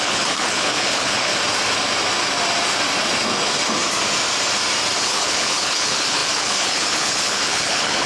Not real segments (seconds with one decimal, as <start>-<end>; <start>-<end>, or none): 0.0-1.3; 5.0-8.1

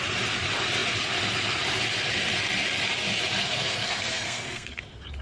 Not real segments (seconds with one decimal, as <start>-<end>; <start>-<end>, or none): 3.4-4.8

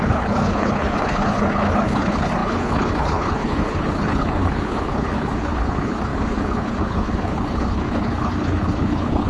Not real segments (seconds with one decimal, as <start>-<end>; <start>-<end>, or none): 0.0-9.3

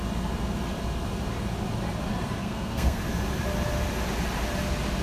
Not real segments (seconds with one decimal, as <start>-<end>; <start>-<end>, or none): 2.4-3.0

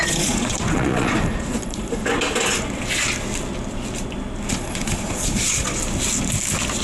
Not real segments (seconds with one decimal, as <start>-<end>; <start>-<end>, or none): 0.0-2.0; 4.5-5.8